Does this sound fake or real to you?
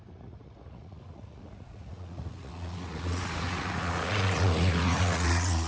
fake